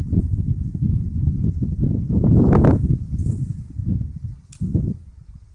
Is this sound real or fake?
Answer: real